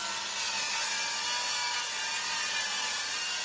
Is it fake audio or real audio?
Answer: real